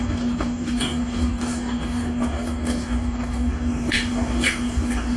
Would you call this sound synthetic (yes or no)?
yes